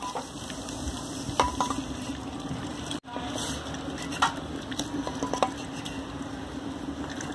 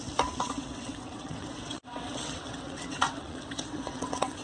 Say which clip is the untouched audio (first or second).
first